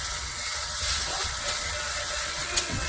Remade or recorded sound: remade